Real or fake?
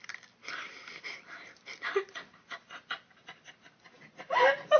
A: real